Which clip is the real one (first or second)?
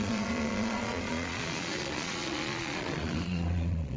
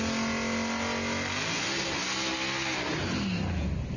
second